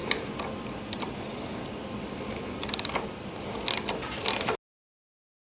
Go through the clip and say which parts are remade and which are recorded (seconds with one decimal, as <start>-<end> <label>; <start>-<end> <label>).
0.0-5.5 recorded